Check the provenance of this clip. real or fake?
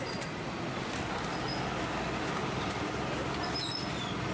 real